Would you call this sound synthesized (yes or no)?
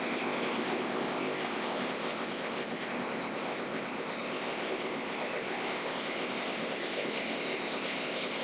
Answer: yes